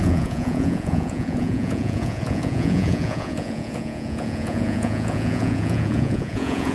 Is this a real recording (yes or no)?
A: no